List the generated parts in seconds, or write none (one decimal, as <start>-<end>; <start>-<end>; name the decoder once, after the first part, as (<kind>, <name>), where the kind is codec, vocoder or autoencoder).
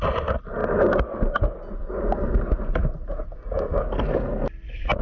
3.3-3.8 (codec, DAC)